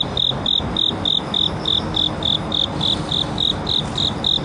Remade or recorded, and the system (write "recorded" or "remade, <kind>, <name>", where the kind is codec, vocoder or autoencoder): recorded